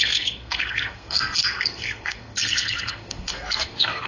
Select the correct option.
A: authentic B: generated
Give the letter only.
B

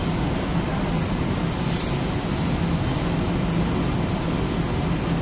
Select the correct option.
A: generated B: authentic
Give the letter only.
B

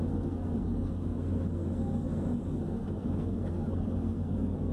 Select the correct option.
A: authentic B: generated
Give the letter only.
B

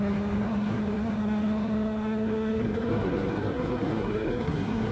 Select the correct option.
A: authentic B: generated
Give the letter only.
B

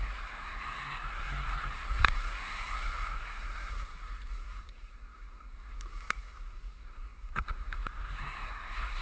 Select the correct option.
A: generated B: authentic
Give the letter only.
A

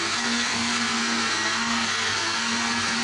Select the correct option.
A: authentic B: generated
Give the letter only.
B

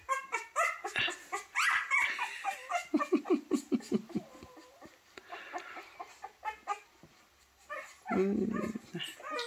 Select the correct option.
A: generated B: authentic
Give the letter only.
B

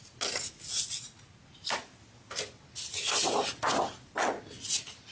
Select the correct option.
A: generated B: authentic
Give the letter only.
B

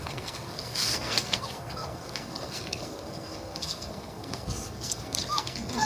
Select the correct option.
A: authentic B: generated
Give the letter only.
B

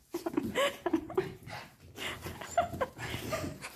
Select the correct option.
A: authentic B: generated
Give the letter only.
A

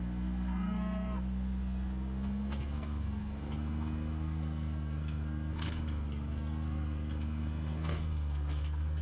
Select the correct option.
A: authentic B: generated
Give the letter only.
B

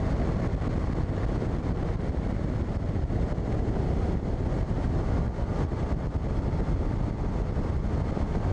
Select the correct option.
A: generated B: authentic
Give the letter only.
B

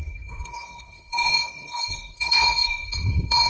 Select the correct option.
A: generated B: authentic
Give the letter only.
A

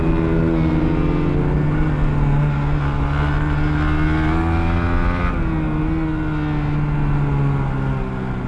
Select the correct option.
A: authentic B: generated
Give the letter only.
A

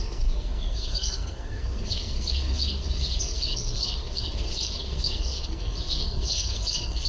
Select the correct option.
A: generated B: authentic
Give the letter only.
A